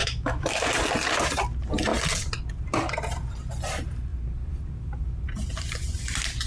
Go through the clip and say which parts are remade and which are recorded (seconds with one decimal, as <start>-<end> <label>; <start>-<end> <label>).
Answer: 0.0-0.7 remade; 0.7-6.5 recorded